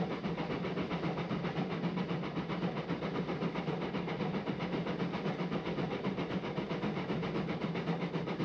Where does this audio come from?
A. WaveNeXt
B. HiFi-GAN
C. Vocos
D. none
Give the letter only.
D